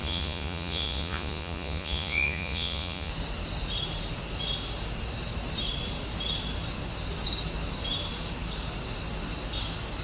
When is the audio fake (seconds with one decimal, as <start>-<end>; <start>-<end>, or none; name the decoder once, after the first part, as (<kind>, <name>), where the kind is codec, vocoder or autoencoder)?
0.0-3.1 (vocoder, Vocos)